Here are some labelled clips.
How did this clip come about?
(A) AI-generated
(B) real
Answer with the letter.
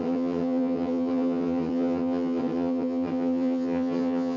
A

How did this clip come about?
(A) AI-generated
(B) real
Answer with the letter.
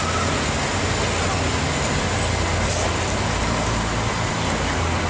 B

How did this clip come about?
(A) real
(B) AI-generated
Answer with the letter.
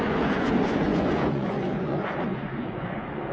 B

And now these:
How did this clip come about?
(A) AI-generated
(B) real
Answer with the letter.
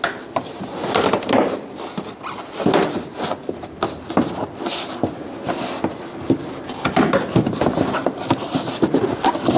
B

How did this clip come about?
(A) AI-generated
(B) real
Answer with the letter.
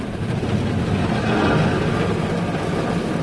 B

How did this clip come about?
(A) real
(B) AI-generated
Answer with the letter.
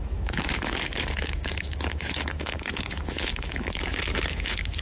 B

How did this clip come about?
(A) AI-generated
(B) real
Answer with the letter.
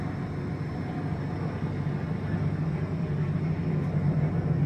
B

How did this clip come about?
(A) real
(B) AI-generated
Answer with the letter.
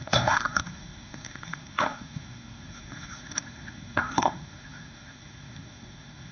B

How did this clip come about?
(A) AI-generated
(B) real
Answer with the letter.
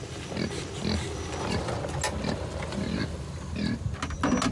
B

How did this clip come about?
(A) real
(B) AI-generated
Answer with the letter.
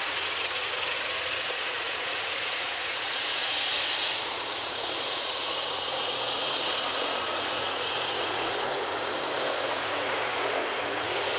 B